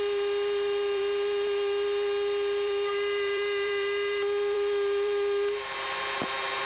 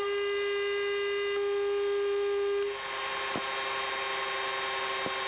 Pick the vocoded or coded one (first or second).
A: first